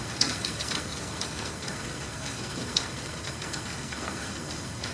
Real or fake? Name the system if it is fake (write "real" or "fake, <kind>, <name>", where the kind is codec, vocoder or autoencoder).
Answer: fake, codec, SNAC